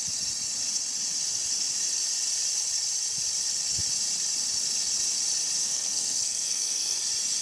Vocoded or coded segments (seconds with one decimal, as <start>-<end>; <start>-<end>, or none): 5.6-7.0